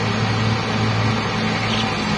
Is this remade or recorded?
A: recorded